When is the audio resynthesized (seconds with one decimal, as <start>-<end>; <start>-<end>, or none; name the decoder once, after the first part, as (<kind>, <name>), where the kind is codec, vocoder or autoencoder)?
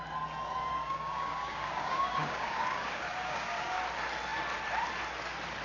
0.6-3.8 (codec, DAC)